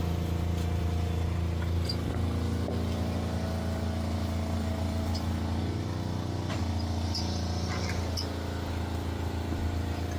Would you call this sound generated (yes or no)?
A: no